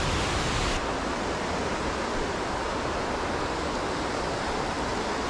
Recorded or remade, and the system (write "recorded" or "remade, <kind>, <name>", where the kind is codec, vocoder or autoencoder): recorded